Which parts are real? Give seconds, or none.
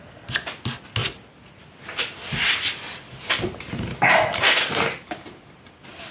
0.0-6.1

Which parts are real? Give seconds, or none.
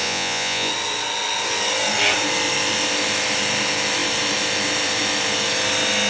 0.7-6.1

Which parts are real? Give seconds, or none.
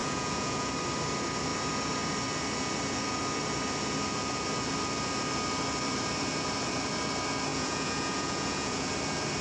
0.7-7.5; 8.9-9.4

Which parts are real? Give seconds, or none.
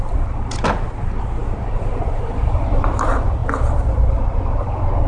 0.0-5.1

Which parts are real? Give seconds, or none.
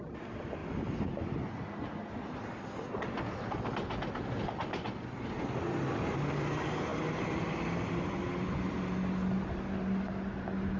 0.0-10.8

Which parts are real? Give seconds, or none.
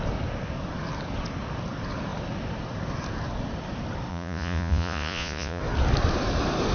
0.0-4.1; 5.6-6.7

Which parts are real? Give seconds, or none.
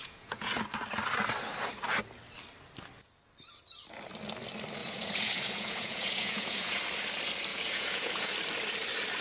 0.5-4.8; 6.8-7.5; 8.3-9.2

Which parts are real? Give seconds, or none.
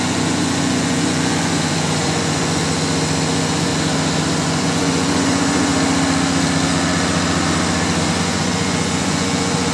2.6-3.3; 3.7-4.4; 5.7-8.2